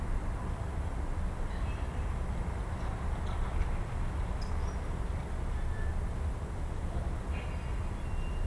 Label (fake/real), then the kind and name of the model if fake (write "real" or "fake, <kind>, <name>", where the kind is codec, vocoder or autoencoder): real